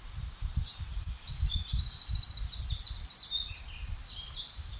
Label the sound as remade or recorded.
recorded